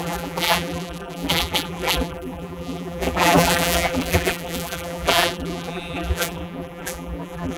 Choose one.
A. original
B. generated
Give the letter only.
B